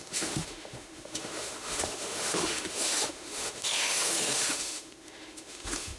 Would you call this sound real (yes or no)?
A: no